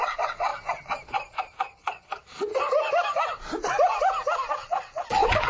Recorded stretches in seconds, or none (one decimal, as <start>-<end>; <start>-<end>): 0.5-1.6; 2.5-4.5